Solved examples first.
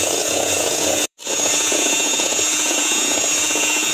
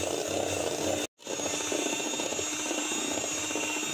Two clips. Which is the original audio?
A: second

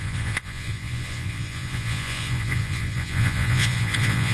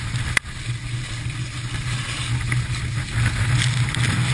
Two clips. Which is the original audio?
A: second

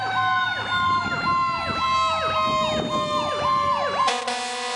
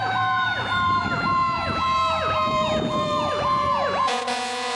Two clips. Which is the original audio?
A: first